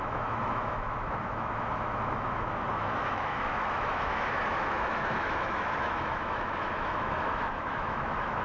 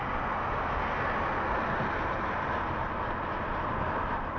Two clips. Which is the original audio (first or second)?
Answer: second